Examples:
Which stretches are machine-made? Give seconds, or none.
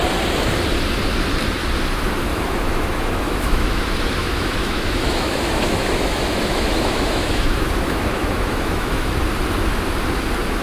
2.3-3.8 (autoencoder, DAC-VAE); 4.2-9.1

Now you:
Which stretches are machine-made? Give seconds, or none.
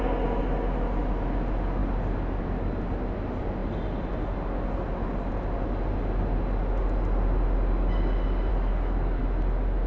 8.5-9.2 (codec, DAC)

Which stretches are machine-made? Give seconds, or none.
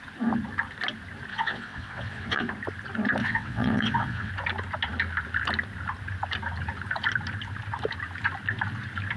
1.3-2.5 (vocoder, WaveNeXt); 3.2-4.3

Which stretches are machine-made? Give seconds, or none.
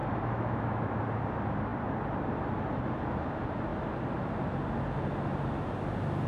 0.0-0.9 (autoencoder, DAC-VAE)